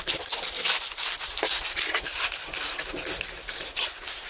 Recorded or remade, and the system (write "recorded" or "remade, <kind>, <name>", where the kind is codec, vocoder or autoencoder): recorded